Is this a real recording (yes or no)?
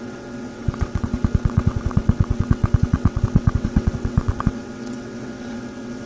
no